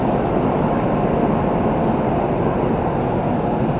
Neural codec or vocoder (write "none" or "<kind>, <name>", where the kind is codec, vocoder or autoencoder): none